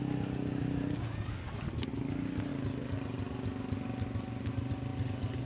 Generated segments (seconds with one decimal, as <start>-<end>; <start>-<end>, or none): none